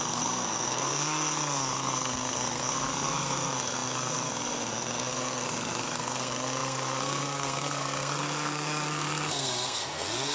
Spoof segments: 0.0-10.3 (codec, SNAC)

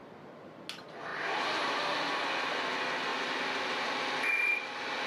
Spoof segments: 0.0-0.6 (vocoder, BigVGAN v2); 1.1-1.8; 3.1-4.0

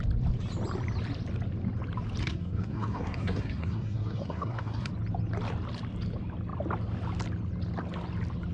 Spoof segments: 2.2-4.9 (codec, SNAC)

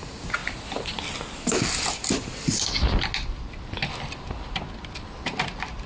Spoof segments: none